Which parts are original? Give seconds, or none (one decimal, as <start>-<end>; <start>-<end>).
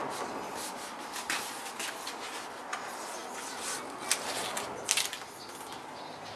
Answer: 0.0-3.2; 4.0-6.4